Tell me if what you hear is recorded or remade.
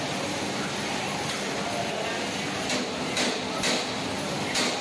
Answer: recorded